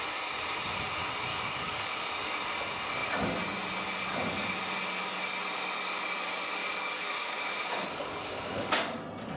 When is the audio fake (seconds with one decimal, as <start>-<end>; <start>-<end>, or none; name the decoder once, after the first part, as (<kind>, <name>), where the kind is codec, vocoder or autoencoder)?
1.3-2.1 (codec, DAC); 6.6-9.0